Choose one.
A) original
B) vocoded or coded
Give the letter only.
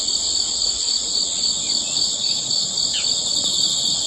A